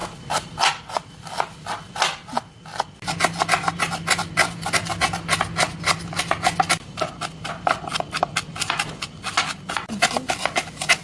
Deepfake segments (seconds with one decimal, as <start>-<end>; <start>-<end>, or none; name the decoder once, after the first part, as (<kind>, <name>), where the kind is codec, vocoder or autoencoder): none